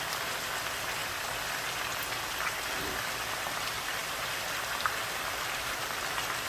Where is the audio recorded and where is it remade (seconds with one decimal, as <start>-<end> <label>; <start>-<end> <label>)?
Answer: 0.0-6.5 recorded